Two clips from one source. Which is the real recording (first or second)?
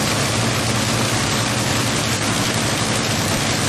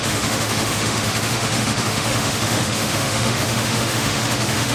first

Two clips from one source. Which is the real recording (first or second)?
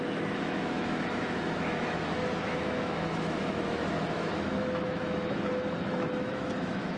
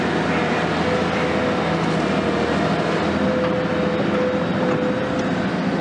second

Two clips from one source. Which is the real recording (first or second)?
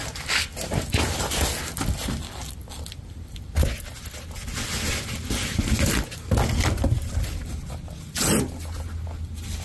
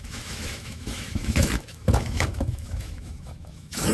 first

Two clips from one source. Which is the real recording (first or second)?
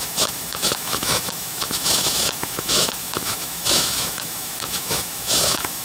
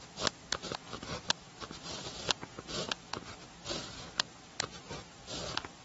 second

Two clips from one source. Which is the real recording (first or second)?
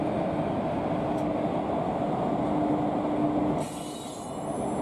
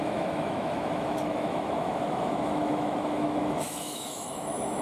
first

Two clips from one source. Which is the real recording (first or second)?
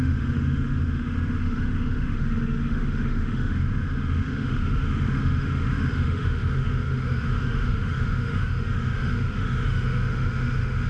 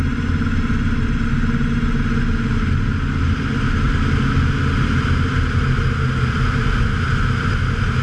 second